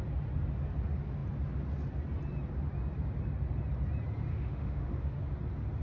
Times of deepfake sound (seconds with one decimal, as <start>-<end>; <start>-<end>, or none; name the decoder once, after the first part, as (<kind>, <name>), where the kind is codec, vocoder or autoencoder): 4.3-5.2 (autoencoder, DAC-VAE)